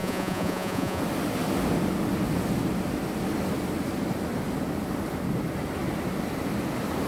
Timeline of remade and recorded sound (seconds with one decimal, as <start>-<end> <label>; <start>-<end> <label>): 0.0-1.0 remade; 1.0-7.1 recorded